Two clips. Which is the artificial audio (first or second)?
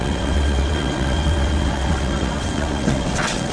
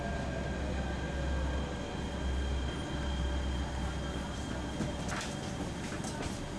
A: first